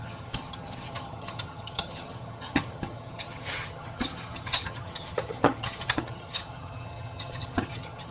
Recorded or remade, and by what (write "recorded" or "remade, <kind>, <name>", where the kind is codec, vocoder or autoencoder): remade, vocoder, HiFi-GAN